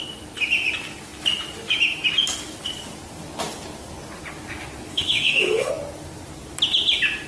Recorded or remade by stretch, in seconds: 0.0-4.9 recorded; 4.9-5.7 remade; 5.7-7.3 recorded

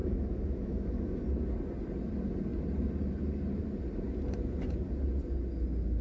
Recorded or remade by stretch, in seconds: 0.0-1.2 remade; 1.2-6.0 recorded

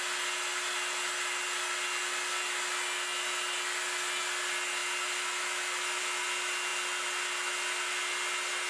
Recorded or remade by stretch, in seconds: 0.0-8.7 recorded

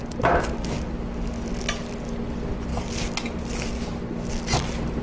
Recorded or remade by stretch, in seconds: 0.0-5.0 recorded

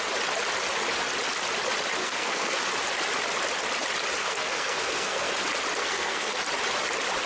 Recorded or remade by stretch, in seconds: 0.0-2.0 recorded; 2.0-2.6 remade; 2.6-4.2 recorded; 4.2-5.3 remade; 5.3-5.8 recorded; 5.8-6.4 remade; 6.4-7.3 recorded

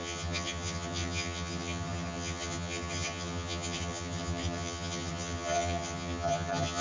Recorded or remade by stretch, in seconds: 0.0-6.8 remade

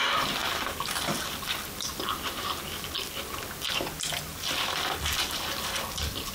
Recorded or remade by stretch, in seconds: 0.0-0.4 recorded; 0.4-1.3 remade; 1.3-4.3 recorded; 4.3-5.8 remade; 5.8-6.3 recorded

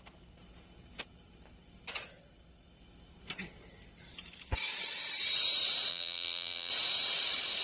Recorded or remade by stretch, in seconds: 0.0-5.9 recorded; 5.9-6.7 remade; 6.7-7.6 recorded